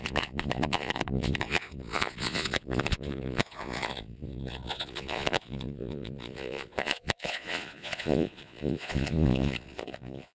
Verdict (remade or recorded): remade